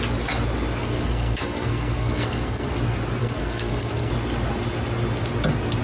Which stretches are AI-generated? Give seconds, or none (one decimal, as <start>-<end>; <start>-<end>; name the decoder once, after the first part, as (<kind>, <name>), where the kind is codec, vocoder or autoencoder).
0.8-2.7 (codec, SNAC); 3.2-4.1